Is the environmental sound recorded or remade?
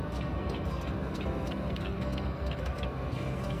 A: remade